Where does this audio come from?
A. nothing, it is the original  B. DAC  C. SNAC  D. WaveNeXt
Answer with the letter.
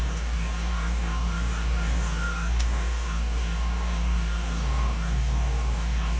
B